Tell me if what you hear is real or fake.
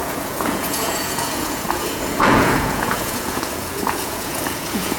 fake